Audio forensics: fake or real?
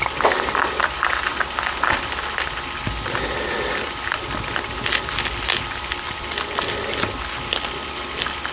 real